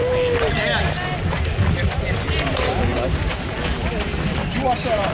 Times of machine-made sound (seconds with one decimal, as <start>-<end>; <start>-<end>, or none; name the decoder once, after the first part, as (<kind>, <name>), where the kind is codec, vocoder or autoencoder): none